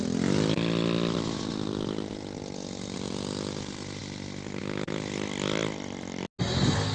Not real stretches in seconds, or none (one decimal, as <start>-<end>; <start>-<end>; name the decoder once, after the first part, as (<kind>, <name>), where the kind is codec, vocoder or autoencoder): none